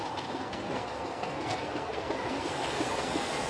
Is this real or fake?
fake